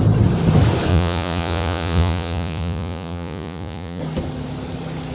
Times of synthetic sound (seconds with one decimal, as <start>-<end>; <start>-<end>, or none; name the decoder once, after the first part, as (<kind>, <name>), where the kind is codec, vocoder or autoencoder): 0.9-4.0 (vocoder, Vocos)